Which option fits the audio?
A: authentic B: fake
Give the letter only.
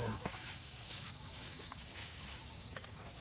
B